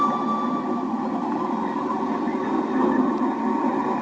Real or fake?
real